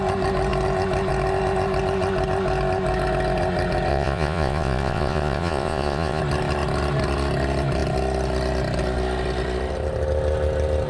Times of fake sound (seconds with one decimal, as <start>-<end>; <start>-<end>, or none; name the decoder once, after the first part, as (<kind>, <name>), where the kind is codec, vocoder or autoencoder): 3.9-6.2 (vocoder, Vocos)